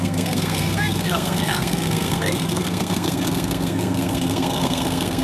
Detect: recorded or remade remade